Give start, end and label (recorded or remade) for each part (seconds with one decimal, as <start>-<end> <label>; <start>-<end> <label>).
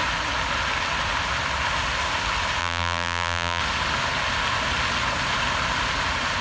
0.0-2.6 recorded; 2.6-3.6 remade; 3.6-6.4 recorded